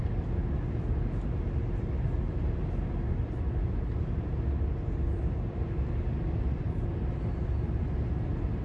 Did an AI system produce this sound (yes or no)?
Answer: no